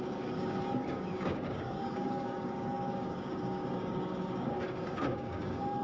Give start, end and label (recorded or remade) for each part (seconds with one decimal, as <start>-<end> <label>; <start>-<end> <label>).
0.0-5.8 remade